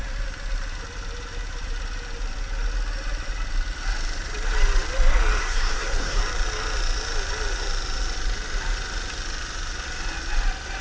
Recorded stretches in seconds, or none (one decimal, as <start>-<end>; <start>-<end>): 0.0-5.4; 6.2-10.8